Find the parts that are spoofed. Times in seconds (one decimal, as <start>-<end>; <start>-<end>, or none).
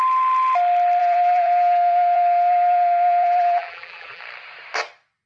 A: 1.0-4.2